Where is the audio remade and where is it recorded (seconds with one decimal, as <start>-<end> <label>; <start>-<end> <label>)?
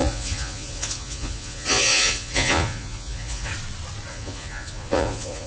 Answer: 0.0-3.5 remade; 3.5-4.1 recorded; 4.1-5.5 remade